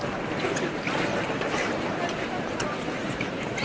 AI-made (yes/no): yes